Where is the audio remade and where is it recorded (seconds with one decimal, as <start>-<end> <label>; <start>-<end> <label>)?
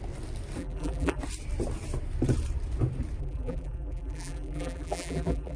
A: 0.0-0.6 recorded; 0.6-1.2 remade; 1.2-3.2 recorded; 3.2-5.6 remade